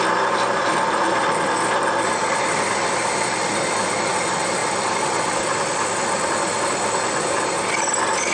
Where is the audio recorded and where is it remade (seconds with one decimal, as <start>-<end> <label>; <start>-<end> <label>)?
0.0-2.2 recorded; 2.2-3.7 remade; 3.7-4.6 recorded; 4.6-6.3 remade; 6.3-8.3 recorded